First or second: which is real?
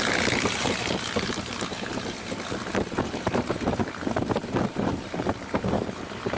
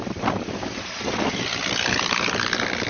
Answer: second